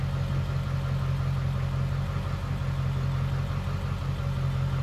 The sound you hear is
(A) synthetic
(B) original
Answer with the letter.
B